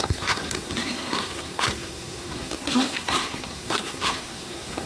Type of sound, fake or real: fake